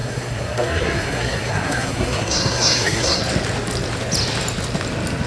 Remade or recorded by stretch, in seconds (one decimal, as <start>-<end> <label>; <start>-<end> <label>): 0.0-3.2 remade; 3.2-5.3 recorded